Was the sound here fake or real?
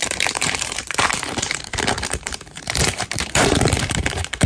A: fake